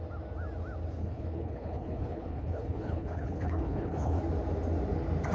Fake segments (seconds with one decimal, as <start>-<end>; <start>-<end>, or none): 1.0-4.2